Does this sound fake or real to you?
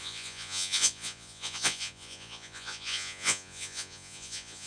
fake